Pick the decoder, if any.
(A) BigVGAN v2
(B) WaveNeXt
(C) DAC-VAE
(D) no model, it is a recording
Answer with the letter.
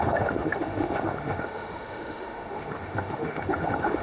C